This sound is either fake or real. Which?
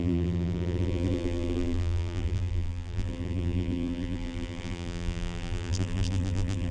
fake